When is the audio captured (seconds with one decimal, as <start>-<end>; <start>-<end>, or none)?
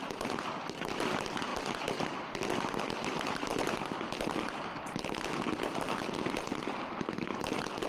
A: 0.0-7.9